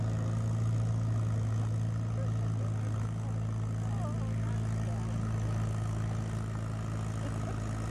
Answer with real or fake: real